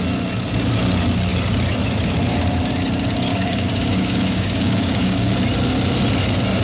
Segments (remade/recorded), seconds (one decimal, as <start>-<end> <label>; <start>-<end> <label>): 0.0-3.3 recorded; 3.3-5.3 remade; 5.3-6.6 recorded